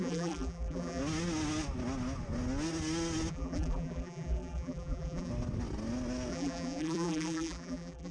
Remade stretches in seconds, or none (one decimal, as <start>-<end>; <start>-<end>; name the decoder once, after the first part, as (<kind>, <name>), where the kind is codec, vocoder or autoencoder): 0.0-1.0 (vocoder, BigVGAN v2); 3.3-5.3; 6.3-8.1